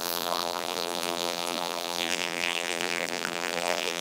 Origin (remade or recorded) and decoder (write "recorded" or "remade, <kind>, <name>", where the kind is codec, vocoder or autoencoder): remade, vocoder, BigVGAN v2